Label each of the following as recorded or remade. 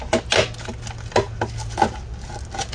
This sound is recorded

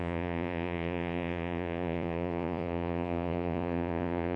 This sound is remade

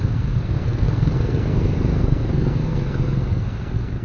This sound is remade